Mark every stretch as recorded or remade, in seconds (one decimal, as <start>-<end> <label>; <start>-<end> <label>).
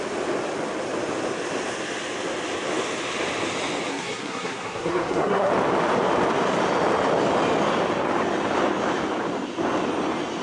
0.0-3.9 recorded; 3.9-5.5 remade; 5.5-10.4 recorded